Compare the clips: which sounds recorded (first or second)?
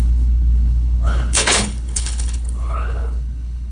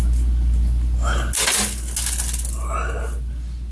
second